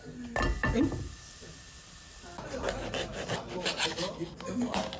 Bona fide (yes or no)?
yes